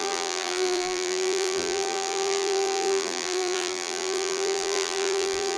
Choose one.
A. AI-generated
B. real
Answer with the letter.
A